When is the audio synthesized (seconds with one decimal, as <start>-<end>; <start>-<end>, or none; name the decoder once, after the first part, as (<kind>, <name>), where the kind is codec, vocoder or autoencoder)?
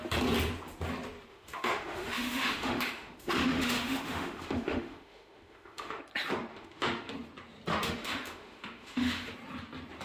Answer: 1.3-6.0 (autoencoder, DAC-VAE); 6.5-7.1; 7.7-9.3